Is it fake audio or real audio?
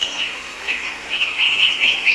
fake